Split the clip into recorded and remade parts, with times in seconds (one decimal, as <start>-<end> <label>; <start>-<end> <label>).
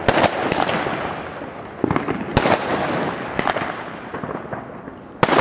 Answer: 0.0-5.4 recorded